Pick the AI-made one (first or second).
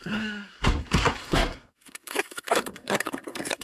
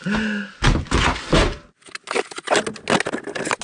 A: first